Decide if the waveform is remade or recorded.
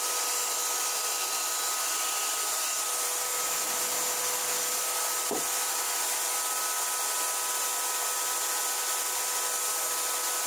recorded